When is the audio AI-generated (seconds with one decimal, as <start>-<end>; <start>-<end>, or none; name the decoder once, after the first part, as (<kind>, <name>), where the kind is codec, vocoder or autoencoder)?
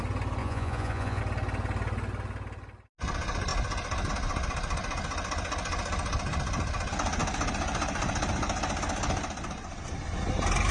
0.4-1.2 (vocoder, Vocos)